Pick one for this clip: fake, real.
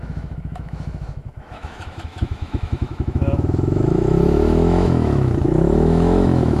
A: fake